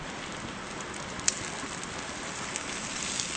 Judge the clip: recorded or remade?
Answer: recorded